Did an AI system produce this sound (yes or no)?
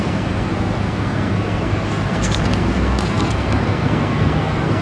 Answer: yes